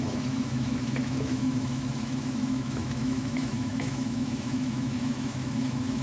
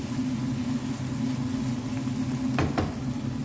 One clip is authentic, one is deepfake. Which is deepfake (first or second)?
first